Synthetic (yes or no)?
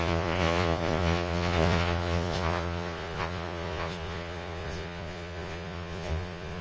yes